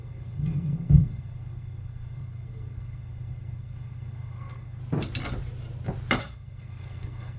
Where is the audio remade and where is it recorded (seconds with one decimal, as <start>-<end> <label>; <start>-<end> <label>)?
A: 0.0-4.8 remade; 4.8-6.2 recorded; 6.2-7.4 remade